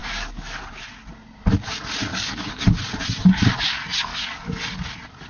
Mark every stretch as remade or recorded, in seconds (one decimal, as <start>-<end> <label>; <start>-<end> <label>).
0.0-0.6 remade; 0.6-2.1 recorded; 2.1-2.8 remade; 2.8-4.1 recorded; 4.1-4.6 remade; 4.6-5.3 recorded